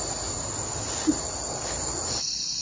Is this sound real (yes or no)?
yes